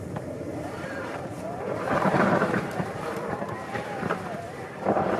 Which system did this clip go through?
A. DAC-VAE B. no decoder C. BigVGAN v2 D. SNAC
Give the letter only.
C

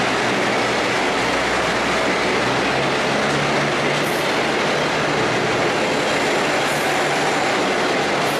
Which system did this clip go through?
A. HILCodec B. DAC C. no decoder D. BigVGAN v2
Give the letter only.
C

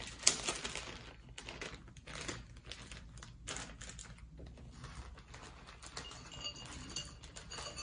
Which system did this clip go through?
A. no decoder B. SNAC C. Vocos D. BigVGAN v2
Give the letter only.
A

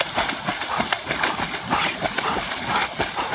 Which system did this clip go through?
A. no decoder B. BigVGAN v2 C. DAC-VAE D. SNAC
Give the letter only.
B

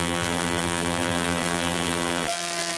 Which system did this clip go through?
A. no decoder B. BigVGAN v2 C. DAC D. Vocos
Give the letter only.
B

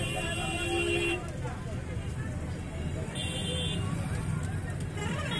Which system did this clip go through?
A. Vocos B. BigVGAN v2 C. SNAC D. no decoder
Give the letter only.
D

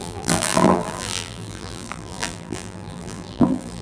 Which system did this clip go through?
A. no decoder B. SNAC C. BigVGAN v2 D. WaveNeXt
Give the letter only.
C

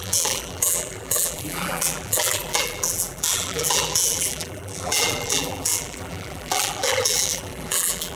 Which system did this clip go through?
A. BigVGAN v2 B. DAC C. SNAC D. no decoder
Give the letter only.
A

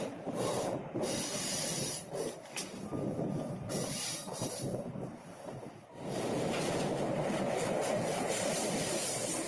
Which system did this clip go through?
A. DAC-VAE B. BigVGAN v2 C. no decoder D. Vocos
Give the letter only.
B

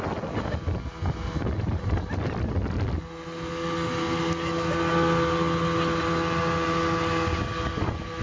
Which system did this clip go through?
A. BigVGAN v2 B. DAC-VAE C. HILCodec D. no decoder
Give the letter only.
D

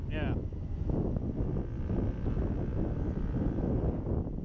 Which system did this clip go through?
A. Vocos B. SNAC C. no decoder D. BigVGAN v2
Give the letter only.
D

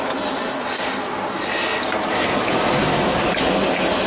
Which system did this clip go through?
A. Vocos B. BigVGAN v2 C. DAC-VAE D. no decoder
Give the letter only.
D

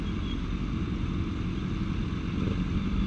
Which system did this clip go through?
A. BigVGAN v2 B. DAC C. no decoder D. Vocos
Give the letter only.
C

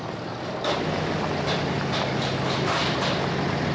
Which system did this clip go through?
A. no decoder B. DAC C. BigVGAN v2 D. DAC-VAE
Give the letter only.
A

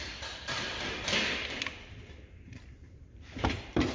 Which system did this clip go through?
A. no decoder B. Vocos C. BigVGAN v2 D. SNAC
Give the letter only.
C